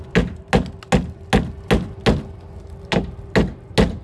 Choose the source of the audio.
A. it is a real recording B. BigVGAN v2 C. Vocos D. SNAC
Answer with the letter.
A